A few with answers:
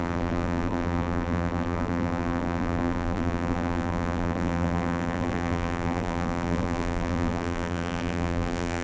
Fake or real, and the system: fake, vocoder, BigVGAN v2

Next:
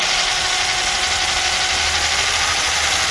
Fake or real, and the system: real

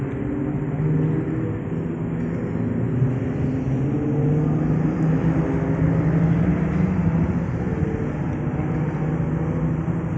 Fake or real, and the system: real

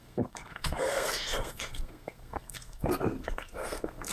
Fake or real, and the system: fake, codec, SNAC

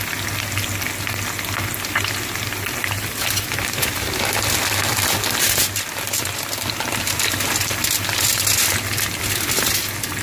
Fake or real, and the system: real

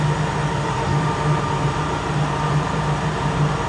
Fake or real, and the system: fake, vocoder, BigVGAN v2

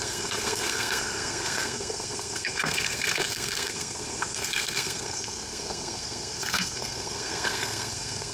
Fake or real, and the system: fake, codec, SNAC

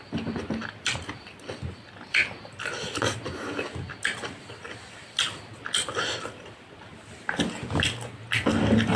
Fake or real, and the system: real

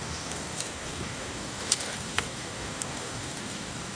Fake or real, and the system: fake, codec, DAC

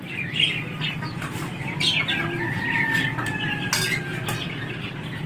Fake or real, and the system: real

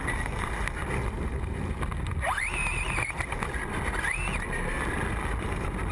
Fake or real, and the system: real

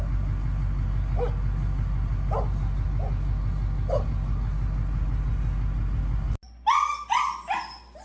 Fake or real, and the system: real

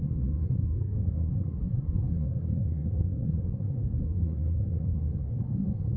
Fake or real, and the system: fake, codec, SNAC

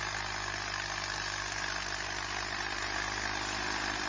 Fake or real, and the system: real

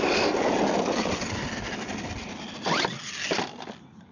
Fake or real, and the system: real